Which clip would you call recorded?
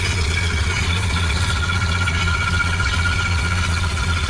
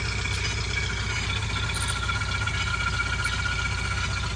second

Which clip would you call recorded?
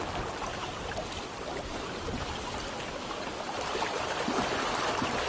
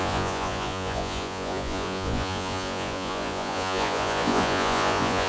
first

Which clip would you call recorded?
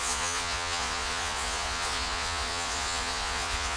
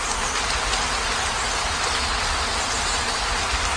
second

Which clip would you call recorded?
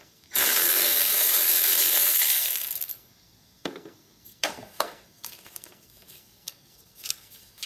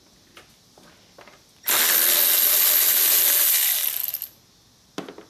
second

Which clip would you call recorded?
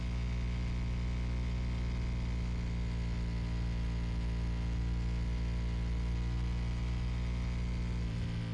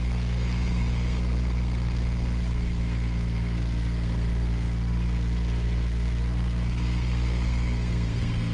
first